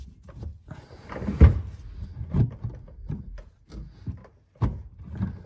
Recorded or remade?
recorded